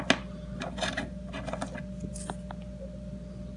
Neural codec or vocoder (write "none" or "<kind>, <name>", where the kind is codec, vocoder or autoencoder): none